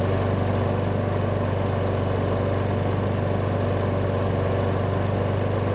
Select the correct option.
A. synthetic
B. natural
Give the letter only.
B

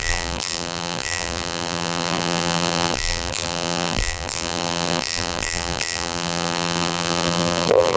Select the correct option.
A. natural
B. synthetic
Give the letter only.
B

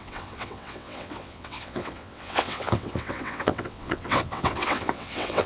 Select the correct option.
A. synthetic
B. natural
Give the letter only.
A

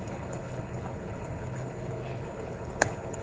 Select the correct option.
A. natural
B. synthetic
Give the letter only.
B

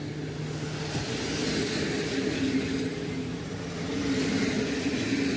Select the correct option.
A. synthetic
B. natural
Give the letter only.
B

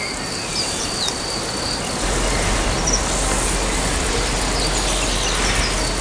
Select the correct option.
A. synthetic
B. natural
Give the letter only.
B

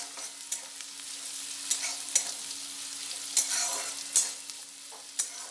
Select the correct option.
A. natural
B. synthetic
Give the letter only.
A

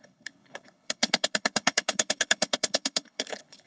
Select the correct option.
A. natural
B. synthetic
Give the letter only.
B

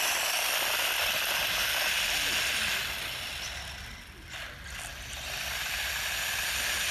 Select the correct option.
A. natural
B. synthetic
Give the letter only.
A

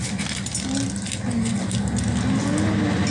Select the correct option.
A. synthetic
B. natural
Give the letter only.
B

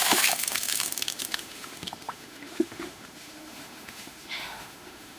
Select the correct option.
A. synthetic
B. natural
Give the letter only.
A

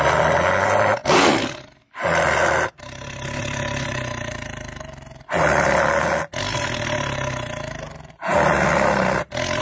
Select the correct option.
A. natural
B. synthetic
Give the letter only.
A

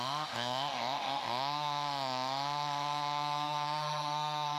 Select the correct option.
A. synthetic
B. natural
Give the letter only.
A